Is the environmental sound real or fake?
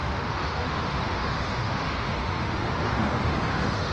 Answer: fake